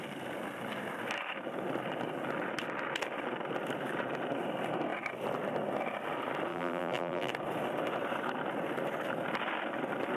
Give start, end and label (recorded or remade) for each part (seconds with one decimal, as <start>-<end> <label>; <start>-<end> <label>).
0.0-6.5 recorded; 6.5-7.3 remade; 7.3-10.2 recorded